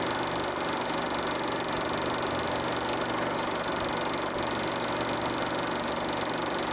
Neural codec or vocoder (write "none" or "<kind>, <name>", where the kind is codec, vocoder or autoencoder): none